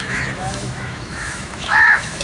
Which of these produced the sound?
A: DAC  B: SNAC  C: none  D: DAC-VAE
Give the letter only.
D